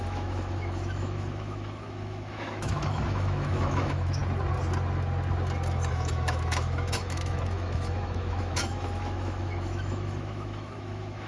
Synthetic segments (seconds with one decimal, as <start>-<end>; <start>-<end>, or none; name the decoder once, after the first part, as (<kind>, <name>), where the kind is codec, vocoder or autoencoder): 0.0-4.2 (autoencoder, DAC-VAE); 5.9-11.3